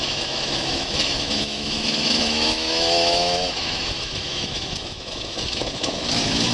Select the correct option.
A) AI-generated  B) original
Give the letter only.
A